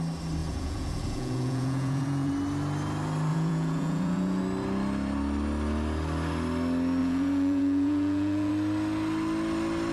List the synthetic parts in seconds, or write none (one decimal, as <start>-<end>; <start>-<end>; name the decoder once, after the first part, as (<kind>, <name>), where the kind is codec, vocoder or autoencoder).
0.4-2.3 (vocoder, Vocos); 3.3-4.4; 7.0-8.5

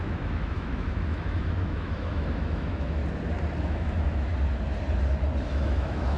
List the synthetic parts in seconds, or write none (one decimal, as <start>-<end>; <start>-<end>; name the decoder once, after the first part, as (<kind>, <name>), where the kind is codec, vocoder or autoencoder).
0.0-3.0 (autoencoder, DAC-VAE); 3.6-4.3; 5.5-6.2

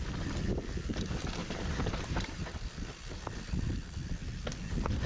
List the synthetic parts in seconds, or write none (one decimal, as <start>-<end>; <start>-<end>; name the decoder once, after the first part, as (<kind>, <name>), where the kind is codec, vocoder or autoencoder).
1.4-2.4 (vocoder, BigVGAN v2)

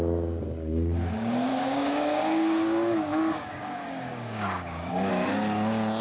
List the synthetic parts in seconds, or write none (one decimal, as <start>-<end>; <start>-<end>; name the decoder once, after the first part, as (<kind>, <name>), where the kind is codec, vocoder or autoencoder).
1.5-5.1 (codec, DAC)